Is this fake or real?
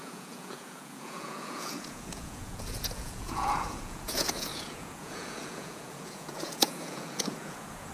fake